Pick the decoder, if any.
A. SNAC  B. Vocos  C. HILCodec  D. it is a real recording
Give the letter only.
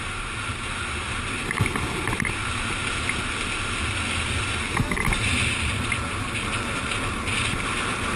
D